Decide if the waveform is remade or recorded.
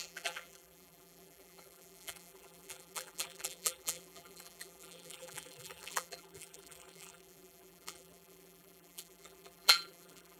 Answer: remade